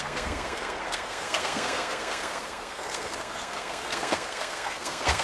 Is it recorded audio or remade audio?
remade